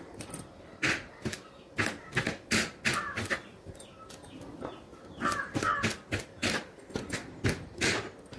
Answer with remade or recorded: recorded